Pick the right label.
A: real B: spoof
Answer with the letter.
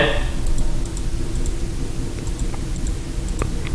A